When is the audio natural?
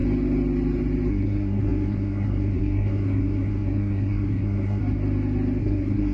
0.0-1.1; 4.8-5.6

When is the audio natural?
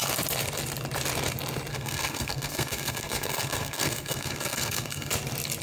0.0-1.7; 5.1-5.6